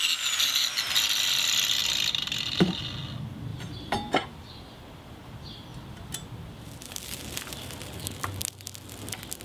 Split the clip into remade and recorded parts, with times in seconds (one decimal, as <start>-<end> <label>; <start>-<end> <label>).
0.0-1.8 recorded; 1.8-2.8 remade; 2.8-3.5 recorded; 3.5-8.4 remade; 8.4-9.4 recorded